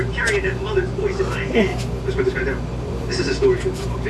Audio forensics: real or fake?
real